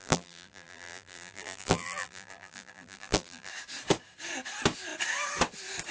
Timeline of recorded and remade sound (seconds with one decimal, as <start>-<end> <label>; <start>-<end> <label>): 0.0-3.5 remade; 3.5-5.9 recorded